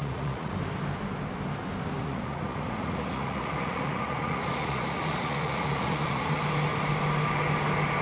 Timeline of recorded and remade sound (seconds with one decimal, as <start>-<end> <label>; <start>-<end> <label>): 0.0-0.5 remade; 0.5-2.0 recorded; 2.0-6.4 remade; 6.4-8.0 recorded